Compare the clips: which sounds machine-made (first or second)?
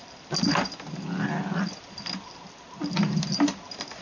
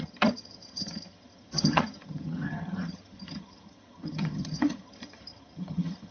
second